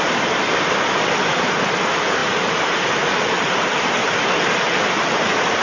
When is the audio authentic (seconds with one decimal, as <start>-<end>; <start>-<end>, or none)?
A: 0.0-5.6